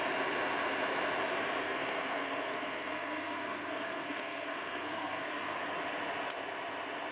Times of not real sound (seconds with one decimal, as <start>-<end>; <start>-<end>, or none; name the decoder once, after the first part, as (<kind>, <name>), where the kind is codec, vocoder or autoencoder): 1.6-5.3 (codec, SNAC)